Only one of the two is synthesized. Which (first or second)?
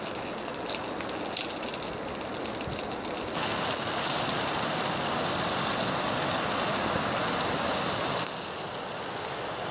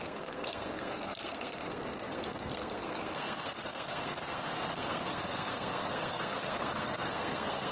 second